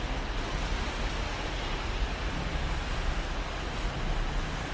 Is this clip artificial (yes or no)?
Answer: no